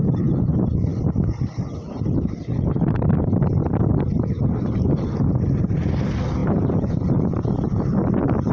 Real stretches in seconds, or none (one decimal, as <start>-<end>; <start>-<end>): 0.0-8.5